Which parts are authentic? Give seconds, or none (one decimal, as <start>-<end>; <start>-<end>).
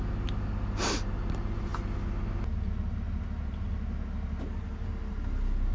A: 0.0-5.7